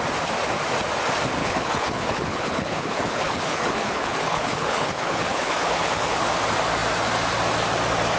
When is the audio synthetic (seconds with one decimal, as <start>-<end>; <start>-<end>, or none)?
1.4-6.3

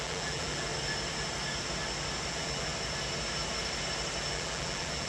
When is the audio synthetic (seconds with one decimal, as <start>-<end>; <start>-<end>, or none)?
0.0-0.7; 2.3-2.7; 4.3-5.1